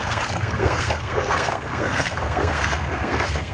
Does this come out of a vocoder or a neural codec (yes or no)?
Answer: yes